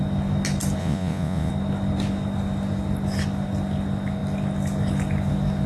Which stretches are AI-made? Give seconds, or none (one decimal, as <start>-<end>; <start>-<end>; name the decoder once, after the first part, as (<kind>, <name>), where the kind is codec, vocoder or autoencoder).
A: 0.8-1.5 (vocoder, Vocos)